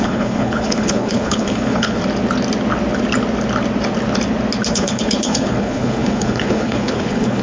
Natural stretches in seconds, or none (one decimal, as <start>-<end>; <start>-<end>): 2.0-4.7